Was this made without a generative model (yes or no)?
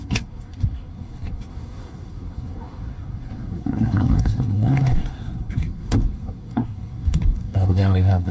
no